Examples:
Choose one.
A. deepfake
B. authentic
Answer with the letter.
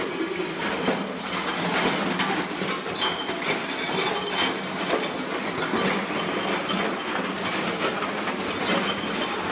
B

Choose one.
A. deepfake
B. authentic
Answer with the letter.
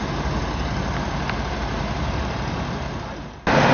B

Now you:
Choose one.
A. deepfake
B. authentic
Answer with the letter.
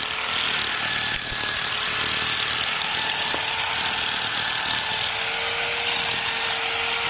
B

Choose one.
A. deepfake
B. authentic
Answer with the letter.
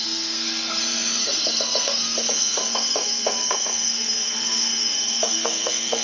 A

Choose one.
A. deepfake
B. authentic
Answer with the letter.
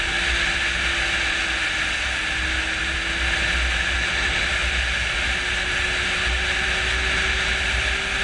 B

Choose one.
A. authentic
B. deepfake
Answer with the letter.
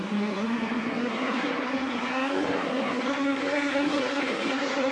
B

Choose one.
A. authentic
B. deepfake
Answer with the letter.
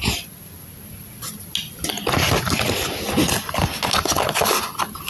A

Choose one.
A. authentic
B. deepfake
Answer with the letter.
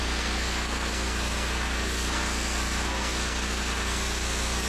B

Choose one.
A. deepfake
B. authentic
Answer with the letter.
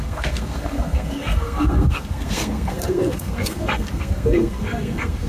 A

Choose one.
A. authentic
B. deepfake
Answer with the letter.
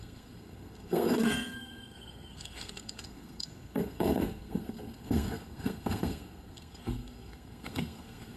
B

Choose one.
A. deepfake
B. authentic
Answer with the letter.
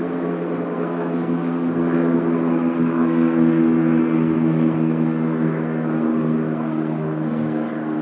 A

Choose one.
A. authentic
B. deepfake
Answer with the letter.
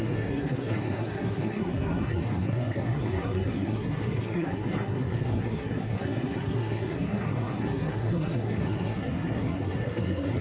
B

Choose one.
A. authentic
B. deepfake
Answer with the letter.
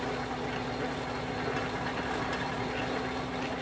A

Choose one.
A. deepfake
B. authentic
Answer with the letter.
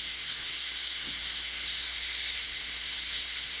A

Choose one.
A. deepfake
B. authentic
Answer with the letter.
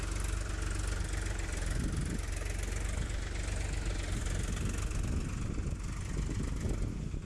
B